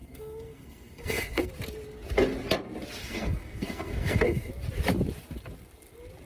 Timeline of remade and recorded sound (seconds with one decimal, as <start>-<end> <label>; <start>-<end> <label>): 0.0-1.5 remade; 1.5-3.0 recorded; 3.0-4.5 remade; 4.5-6.3 recorded